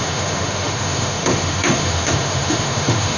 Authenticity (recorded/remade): remade